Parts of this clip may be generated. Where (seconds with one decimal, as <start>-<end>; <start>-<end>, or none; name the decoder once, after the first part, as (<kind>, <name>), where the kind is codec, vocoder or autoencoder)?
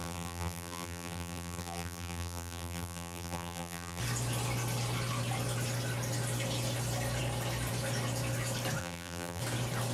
0.0-4.0 (vocoder, BigVGAN v2); 8.8-9.4